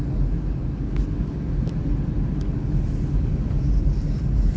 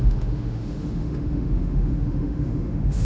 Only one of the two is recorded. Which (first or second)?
first